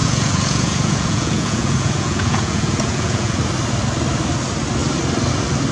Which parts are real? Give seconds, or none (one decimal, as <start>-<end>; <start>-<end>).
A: 3.4-5.7